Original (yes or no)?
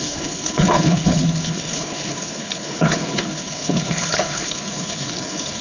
no